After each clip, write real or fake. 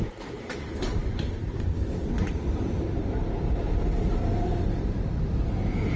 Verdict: fake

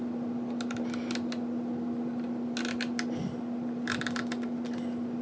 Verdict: real